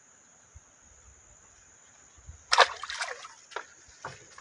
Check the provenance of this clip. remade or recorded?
recorded